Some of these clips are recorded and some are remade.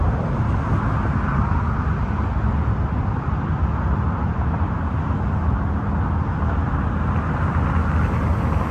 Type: recorded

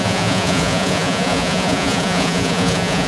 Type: remade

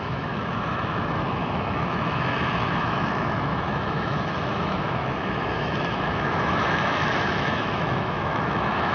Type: remade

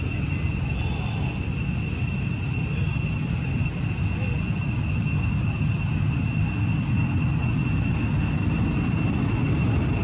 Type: recorded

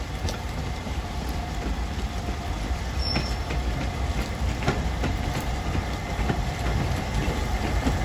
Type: recorded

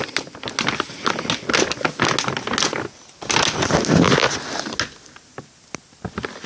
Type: recorded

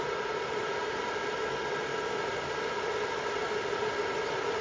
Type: recorded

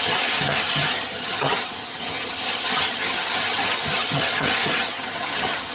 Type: remade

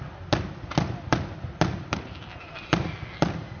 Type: recorded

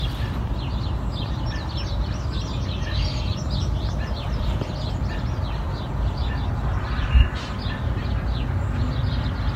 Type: recorded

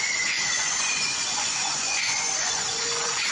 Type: remade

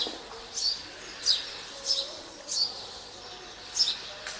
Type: recorded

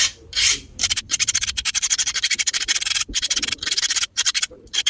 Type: remade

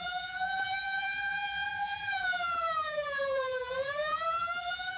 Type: remade